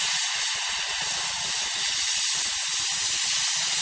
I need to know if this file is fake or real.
real